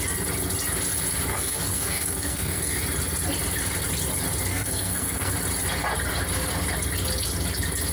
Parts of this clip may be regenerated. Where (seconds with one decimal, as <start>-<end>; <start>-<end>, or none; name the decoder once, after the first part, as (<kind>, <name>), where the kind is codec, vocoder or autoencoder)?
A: 1.3-2.8 (codec, SNAC); 4.5-5.3